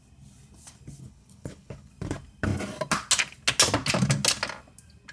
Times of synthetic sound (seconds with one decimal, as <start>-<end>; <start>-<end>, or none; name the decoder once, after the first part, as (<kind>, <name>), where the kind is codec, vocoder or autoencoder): 1.0-1.9 (codec, HILCodec)